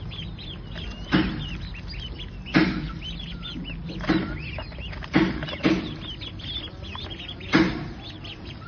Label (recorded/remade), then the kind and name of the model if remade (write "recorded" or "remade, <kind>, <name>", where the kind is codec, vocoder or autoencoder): recorded